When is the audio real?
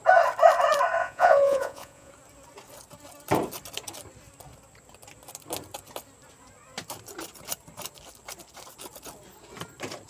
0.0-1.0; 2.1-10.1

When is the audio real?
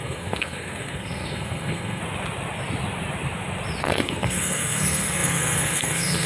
2.0-3.8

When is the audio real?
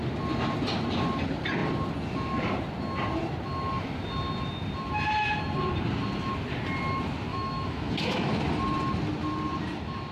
0.0-7.3; 8.3-10.1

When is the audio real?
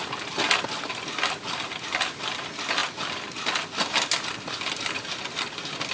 0.0-5.9